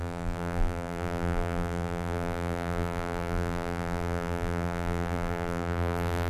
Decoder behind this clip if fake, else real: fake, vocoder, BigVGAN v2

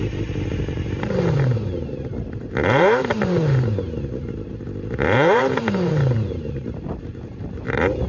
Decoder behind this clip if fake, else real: fake, vocoder, BigVGAN v2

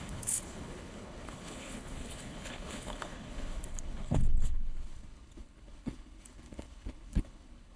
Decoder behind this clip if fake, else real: fake, codec, HILCodec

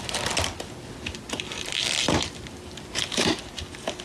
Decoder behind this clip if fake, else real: real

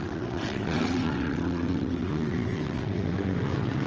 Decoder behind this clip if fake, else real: fake, vocoder, WaveNeXt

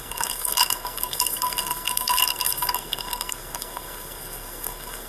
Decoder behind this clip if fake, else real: fake, codec, SNAC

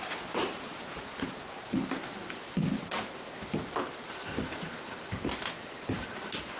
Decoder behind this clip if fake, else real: fake, vocoder, BigVGAN v2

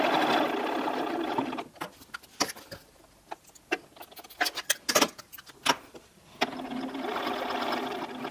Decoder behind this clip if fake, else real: real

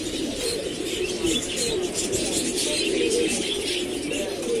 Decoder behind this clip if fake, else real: real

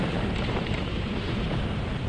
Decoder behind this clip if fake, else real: fake, vocoder, BigVGAN v2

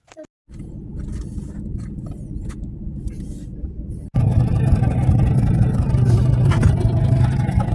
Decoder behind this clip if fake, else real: real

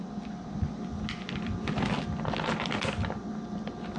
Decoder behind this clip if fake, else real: real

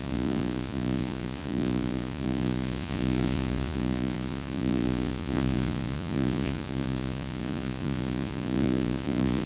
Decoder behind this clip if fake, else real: fake, vocoder, Vocos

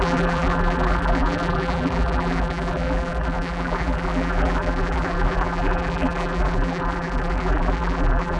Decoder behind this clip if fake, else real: fake, vocoder, BigVGAN v2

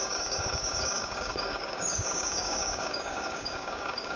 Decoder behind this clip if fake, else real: fake, codec, DAC